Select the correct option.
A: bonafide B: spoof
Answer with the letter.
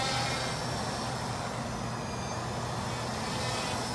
A